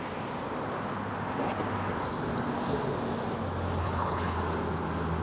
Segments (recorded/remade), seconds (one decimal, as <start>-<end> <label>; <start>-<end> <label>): 0.0-3.8 recorded; 3.8-4.4 remade; 4.4-5.2 recorded